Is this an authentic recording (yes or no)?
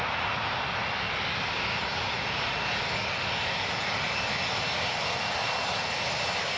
yes